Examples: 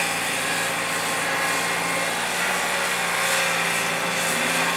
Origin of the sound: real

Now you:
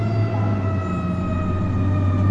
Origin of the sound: real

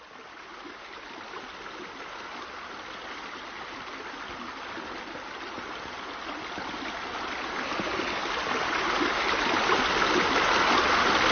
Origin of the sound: real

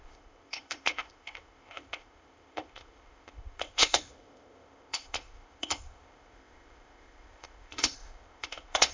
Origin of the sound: fake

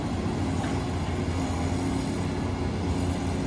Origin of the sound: real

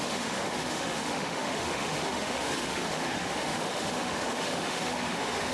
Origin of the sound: fake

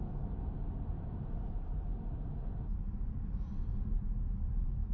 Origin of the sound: fake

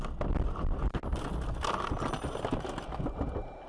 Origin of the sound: real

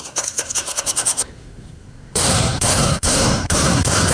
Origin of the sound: fake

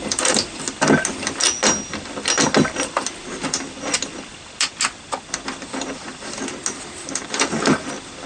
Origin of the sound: real